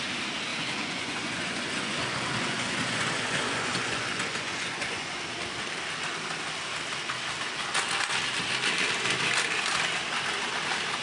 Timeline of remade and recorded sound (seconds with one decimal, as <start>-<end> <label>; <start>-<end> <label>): 0.0-0.5 recorded; 0.5-5.2 remade; 5.2-11.0 recorded